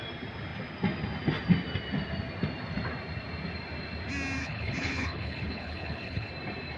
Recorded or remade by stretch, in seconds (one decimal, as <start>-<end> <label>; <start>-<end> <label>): 0.0-4.4 recorded; 4.4-6.3 remade; 6.3-6.8 recorded